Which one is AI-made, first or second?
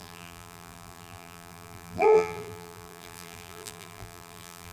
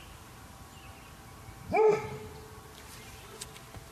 first